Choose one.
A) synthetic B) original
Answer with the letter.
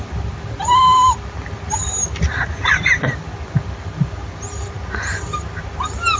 B